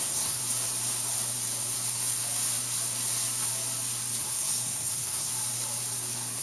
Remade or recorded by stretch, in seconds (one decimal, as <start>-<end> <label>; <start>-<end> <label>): 0.0-0.4 remade; 0.4-4.2 recorded; 4.2-5.3 remade; 5.3-6.4 recorded